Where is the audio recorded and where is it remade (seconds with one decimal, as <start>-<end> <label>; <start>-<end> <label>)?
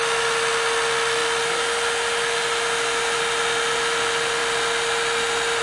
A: 0.0-5.6 recorded